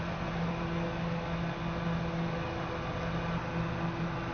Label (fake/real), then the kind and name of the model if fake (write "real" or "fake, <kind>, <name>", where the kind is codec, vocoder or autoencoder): real